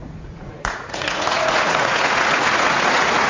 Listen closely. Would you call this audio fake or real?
fake